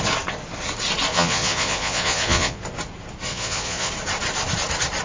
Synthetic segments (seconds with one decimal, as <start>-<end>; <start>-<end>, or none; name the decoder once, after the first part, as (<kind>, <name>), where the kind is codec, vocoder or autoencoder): 1.1-2.6 (vocoder, Vocos); 3.3-3.9